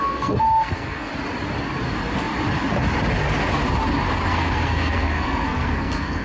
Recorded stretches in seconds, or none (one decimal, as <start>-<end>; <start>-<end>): 1.1-4.2